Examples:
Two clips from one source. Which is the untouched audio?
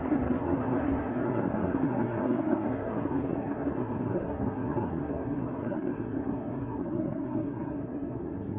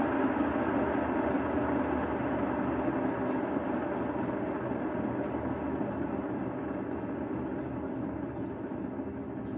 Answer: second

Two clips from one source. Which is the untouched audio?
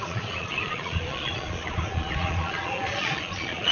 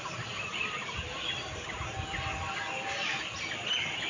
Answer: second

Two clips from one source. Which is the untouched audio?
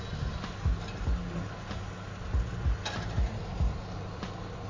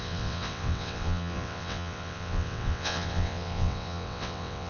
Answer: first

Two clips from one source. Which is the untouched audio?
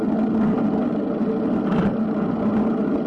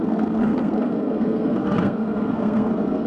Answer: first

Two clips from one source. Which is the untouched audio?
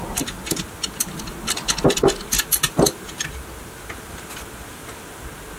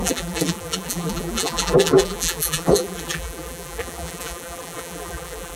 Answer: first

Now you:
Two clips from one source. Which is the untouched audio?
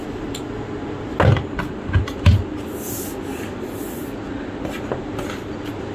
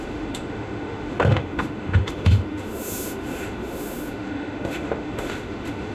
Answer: first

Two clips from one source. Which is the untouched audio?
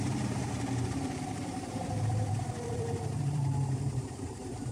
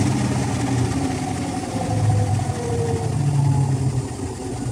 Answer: second